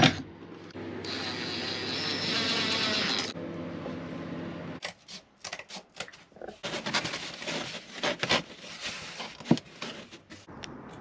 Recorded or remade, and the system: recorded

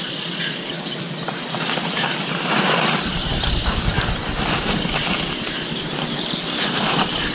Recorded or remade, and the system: remade, vocoder, BigVGAN v2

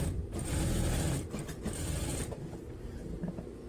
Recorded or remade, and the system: remade, vocoder, BigVGAN v2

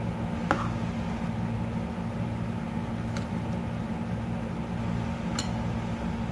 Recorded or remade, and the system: recorded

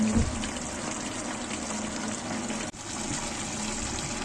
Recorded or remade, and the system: recorded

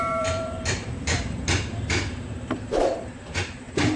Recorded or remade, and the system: remade, vocoder, BigVGAN v2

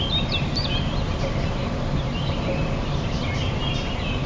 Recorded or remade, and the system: recorded